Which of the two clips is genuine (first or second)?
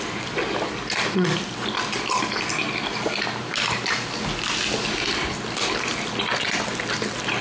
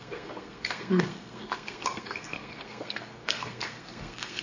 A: first